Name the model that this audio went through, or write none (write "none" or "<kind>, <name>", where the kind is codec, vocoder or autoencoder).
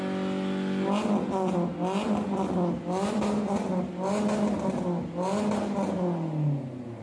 none